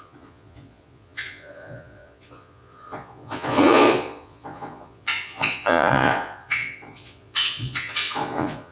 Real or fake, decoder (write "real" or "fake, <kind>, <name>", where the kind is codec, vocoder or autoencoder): fake, vocoder, Vocos